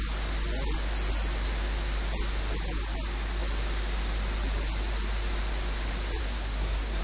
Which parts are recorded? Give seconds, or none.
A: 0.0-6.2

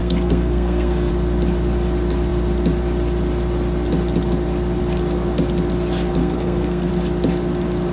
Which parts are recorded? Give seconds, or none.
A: 1.1-6.2; 6.9-7.9

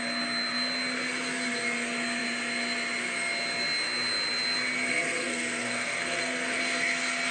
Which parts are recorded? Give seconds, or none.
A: 0.0-4.9; 6.6-7.3

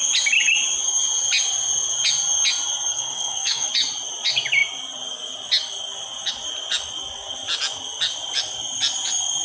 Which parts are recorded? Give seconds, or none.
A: 0.0-2.9; 3.7-9.4